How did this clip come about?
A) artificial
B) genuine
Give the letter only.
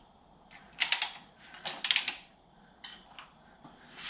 B